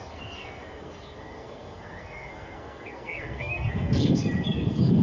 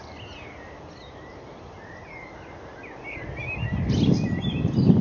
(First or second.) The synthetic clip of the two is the first